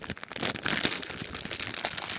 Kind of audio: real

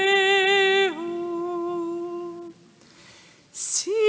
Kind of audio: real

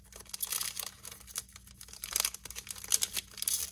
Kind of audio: real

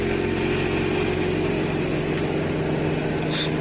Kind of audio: real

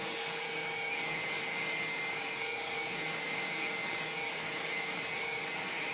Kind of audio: fake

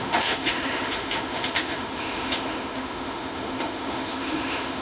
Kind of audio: fake